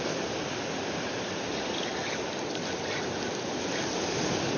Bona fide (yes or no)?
no